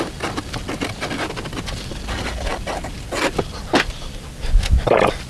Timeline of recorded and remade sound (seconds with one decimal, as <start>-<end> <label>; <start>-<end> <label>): 0.0-5.3 recorded